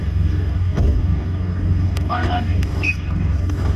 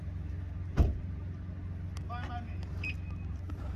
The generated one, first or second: first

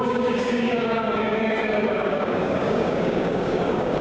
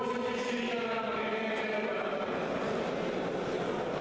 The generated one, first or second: first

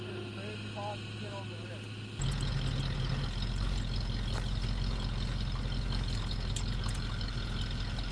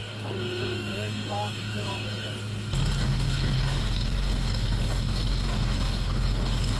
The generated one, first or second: second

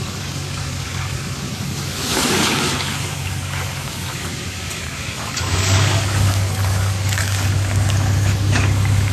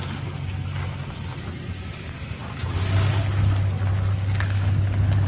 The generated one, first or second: first